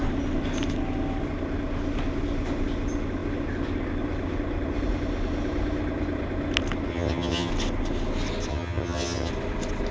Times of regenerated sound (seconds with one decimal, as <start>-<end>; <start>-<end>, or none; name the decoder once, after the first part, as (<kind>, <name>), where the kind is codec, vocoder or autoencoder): 6.9-7.5 (vocoder, HiFi-GAN); 8.5-9.3